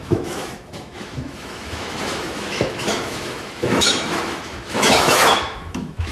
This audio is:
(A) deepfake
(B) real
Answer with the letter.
A